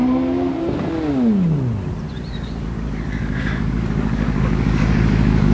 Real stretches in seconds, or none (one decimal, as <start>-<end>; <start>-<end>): 0.0-2.6